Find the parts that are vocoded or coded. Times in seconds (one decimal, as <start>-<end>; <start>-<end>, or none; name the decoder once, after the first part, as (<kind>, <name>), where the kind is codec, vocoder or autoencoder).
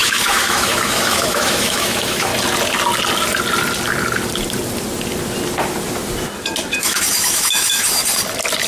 0.0-2.3 (autoencoder, DAC-VAE); 6.8-8.0